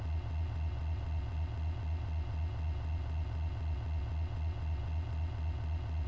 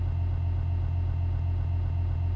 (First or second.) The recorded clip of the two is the second